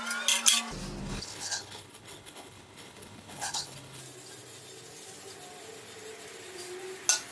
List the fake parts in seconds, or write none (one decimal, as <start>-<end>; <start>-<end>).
1.0-4.0